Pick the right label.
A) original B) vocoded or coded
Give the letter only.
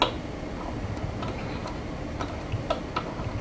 A